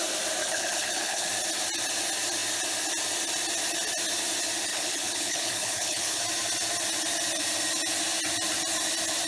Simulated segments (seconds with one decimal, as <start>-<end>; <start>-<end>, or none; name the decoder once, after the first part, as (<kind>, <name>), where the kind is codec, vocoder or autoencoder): 0.4-1.3 (codec, HILCodec); 4.7-6.2